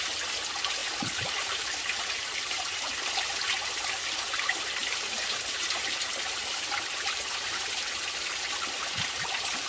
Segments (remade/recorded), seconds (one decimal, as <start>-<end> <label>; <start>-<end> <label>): 0.0-9.7 recorded